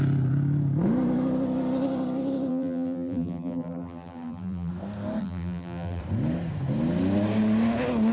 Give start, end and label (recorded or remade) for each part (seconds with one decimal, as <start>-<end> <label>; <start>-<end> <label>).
0.0-2.5 recorded; 2.5-4.7 remade; 4.7-5.2 recorded; 5.2-6.0 remade; 6.0-8.1 recorded